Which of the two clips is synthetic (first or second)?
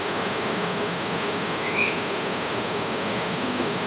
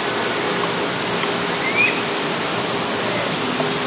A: first